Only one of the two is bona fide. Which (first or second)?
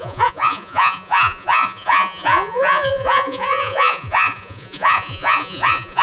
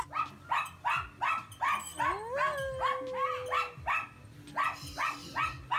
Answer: second